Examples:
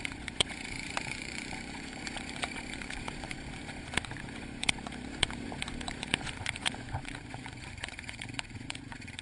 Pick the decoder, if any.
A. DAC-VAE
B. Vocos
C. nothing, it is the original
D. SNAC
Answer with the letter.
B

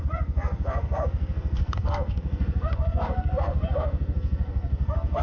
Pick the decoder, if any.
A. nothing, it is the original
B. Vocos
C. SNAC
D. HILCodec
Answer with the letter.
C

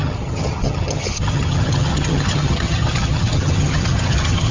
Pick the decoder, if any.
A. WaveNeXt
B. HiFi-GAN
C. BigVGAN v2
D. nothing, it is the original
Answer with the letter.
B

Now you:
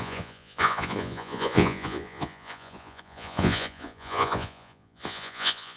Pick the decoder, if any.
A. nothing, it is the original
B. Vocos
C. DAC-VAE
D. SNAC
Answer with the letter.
B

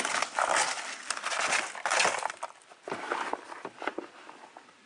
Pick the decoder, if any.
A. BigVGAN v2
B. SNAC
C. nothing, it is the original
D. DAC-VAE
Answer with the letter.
C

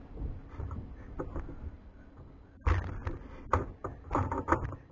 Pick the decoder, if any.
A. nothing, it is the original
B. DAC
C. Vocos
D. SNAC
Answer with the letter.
A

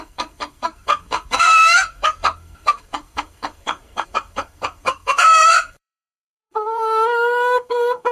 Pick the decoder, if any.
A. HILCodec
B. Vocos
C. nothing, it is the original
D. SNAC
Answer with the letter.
D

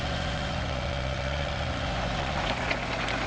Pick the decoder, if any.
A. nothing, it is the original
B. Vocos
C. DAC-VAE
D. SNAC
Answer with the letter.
B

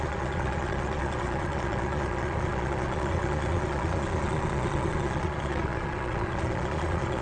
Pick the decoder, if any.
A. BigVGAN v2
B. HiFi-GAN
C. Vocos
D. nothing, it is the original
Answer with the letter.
C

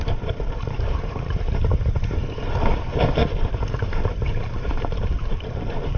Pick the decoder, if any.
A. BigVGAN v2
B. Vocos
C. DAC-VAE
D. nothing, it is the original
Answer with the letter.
A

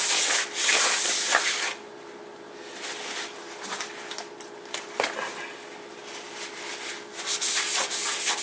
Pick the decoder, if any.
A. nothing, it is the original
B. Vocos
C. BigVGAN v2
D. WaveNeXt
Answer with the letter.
A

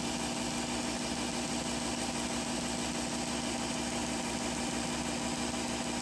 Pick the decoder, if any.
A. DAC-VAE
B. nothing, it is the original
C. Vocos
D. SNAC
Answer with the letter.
B